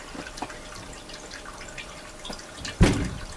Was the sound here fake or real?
real